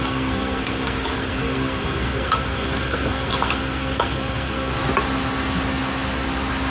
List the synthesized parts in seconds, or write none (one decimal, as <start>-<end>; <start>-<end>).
0.0-4.7